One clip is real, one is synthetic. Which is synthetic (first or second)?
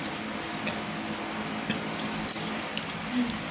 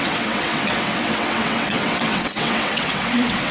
second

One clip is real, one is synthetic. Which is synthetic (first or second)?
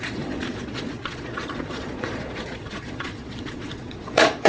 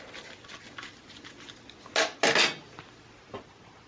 first